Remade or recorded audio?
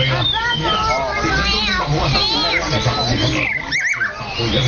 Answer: recorded